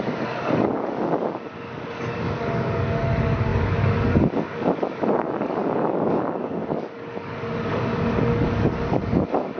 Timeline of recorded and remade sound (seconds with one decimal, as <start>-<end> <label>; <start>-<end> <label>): 0.0-9.6 remade

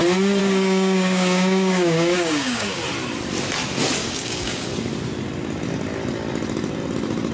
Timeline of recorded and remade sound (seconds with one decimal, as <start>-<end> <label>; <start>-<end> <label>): 0.0-0.4 recorded; 0.4-2.8 remade; 2.8-4.0 recorded; 4.0-4.7 remade; 4.7-7.3 recorded

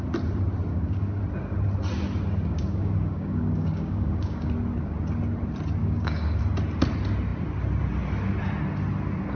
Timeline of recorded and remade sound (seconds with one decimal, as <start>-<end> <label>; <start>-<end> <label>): 0.0-0.7 recorded; 0.7-1.2 remade; 1.2-2.5 recorded; 2.5-4.5 remade; 4.5-5.8 recorded; 5.8-6.4 remade; 6.4-9.4 recorded

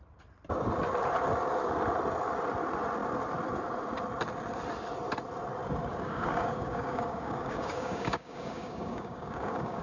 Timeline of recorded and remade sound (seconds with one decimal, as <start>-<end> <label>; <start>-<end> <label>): 0.0-5.9 recorded; 5.9-9.8 remade

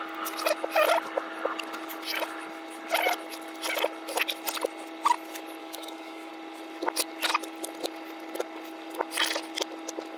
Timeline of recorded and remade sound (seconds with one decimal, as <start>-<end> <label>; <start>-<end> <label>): 0.0-5.6 recorded; 5.6-6.3 remade; 6.3-10.2 recorded

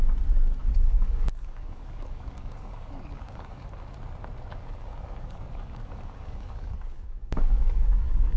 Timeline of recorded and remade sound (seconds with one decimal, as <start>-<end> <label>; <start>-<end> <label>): 0.0-0.6 recorded; 0.6-3.7 remade; 3.7-4.5 recorded; 4.5-8.4 remade